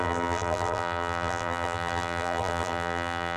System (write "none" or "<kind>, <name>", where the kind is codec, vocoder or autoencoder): vocoder, BigVGAN v2